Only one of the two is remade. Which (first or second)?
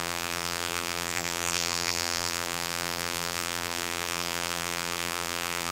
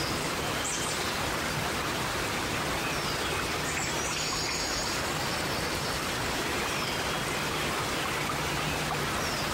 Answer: first